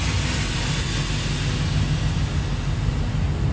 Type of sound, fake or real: real